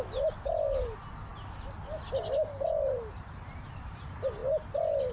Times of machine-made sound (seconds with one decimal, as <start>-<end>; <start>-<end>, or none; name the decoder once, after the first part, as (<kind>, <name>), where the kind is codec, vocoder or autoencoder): none